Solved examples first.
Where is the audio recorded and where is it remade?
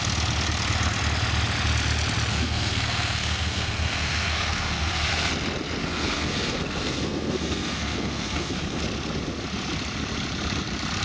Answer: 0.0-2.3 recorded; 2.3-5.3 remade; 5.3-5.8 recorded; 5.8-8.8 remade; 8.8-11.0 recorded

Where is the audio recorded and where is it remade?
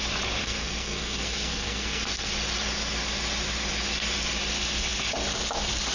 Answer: 0.0-0.4 recorded; 0.4-2.3 remade; 2.3-5.9 recorded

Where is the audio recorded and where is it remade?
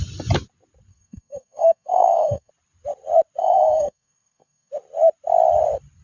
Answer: 0.0-0.9 recorded; 0.9-2.5 remade; 2.5-3.4 recorded; 3.4-4.7 remade; 4.7-6.0 recorded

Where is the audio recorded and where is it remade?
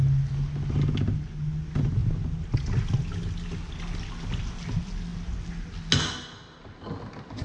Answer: 0.0-7.4 recorded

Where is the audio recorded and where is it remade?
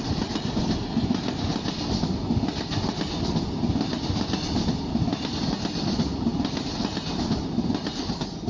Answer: 0.0-8.5 recorded